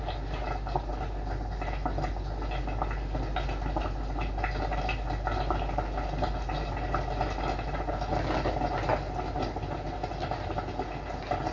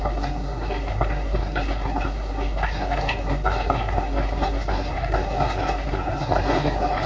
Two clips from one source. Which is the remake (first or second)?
second